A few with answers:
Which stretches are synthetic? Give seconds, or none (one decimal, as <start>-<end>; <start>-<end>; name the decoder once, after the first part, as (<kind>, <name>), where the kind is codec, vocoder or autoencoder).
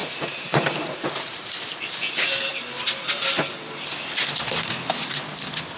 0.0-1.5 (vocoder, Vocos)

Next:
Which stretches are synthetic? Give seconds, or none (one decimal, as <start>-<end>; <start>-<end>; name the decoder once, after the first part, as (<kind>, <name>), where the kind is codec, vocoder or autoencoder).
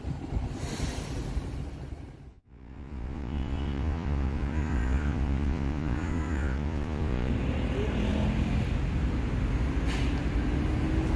2.3-7.3 (vocoder, Vocos)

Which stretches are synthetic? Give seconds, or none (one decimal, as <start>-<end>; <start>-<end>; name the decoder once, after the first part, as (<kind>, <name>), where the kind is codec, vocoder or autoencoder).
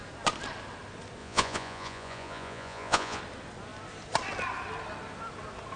1.2-3.2 (vocoder, Vocos)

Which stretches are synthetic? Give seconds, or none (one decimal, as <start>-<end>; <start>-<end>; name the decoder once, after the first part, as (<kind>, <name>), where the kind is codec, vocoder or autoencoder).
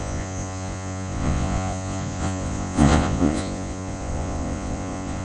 0.0-5.2 (vocoder, Vocos)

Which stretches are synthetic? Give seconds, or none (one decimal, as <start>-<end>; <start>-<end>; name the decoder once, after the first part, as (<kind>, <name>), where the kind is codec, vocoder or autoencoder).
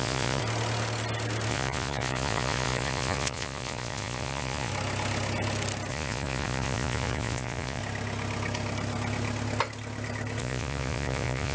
0.0-0.4 (vocoder, Vocos); 1.5-4.7; 5.9-7.8; 10.4-11.5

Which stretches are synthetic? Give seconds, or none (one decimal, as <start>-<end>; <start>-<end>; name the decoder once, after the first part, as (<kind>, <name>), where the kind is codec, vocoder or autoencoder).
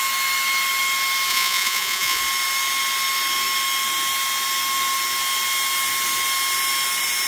1.3-2.2 (vocoder, Vocos)